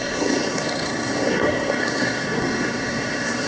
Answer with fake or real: fake